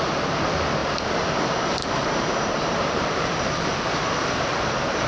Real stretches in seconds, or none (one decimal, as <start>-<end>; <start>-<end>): none